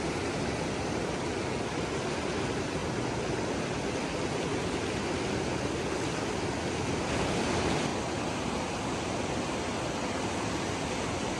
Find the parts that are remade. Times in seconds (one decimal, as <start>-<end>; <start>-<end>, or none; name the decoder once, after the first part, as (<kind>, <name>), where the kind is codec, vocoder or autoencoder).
none